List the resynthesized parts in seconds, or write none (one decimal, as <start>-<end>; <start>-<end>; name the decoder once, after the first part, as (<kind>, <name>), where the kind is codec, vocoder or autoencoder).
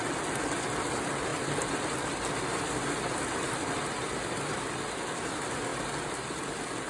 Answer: none